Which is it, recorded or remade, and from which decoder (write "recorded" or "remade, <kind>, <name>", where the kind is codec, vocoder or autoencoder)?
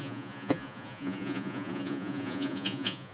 remade, vocoder, Vocos